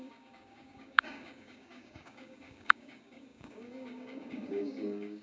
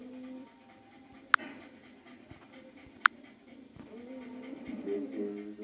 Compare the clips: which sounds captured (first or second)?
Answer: second